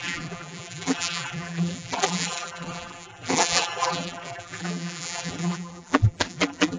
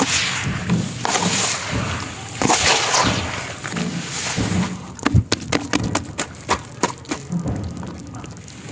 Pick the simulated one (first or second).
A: first